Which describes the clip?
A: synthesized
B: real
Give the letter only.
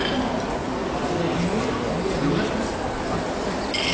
B